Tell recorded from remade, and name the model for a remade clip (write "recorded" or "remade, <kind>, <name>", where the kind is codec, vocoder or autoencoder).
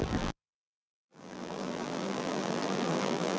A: remade, vocoder, BigVGAN v2